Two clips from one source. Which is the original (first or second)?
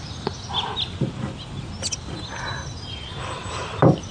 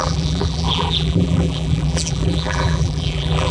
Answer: first